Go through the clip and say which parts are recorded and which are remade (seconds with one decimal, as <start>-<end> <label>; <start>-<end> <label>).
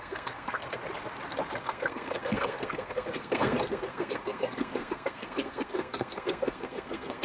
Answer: 0.0-0.8 remade; 0.8-1.6 recorded; 1.6-7.2 remade